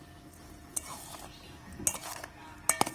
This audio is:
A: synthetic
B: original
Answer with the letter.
B